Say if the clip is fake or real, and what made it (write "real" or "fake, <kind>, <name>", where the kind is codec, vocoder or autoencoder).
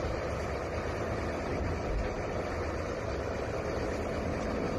real